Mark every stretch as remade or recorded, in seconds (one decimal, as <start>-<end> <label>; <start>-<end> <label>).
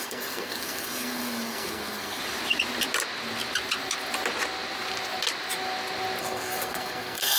0.0-2.2 remade; 2.2-6.2 recorded; 6.2-7.4 remade